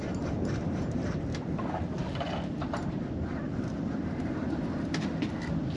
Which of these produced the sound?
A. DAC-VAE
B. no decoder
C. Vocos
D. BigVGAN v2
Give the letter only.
B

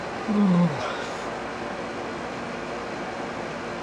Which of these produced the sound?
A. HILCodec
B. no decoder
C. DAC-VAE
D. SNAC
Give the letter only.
B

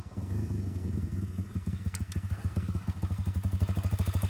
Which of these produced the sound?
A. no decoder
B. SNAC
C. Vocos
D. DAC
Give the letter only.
B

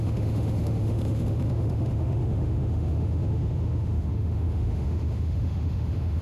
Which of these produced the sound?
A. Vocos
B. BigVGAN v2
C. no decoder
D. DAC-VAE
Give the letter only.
D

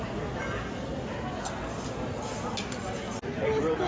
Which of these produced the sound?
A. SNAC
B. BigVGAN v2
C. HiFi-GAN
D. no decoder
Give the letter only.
D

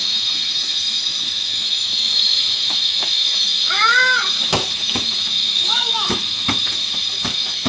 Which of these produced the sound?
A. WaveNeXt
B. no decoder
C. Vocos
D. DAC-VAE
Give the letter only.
D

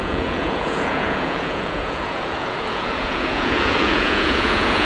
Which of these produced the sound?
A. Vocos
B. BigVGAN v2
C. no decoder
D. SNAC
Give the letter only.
A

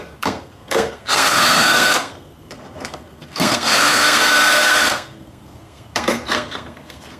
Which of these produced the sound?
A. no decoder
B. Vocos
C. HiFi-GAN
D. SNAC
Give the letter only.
D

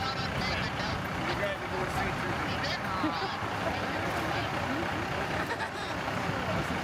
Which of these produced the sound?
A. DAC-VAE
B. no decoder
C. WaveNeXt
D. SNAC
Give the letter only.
B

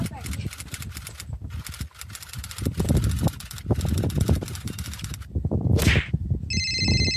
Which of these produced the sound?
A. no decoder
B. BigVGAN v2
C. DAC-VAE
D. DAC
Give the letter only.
A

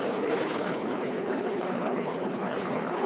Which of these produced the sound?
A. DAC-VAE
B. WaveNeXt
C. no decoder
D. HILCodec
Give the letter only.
D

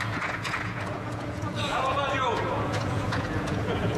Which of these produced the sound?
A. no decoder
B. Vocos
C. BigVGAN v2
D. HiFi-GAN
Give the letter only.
B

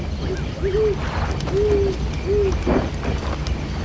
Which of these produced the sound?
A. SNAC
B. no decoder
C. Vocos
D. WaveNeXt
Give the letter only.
B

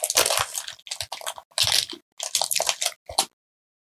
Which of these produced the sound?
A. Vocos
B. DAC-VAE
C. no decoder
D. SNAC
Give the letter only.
C